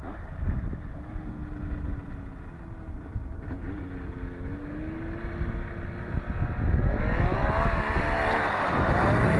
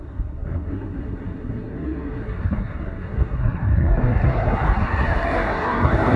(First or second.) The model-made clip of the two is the second